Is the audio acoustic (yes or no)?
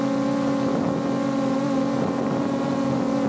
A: yes